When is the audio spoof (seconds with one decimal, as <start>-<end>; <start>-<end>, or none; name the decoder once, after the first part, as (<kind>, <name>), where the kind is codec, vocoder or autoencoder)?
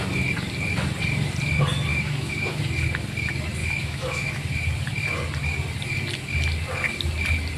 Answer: 1.9-2.6 (autoencoder, DAC-VAE); 3.6-4.4